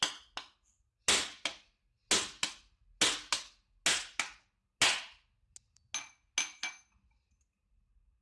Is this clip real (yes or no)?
yes